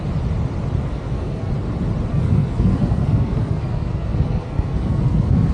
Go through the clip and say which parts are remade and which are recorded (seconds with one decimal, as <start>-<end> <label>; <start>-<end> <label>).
0.0-0.8 recorded; 0.8-1.5 remade; 1.5-2.1 recorded; 2.1-5.5 remade